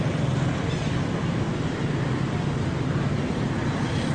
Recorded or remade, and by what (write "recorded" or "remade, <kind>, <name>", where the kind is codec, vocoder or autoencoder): recorded